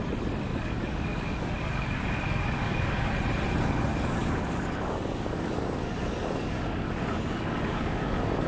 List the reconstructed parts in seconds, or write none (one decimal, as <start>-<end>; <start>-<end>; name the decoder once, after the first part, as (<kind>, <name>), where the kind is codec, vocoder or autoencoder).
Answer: 0.5-3.1 (codec, DAC); 3.9-8.5